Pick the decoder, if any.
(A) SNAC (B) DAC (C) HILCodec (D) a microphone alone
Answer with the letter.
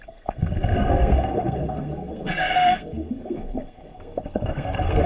A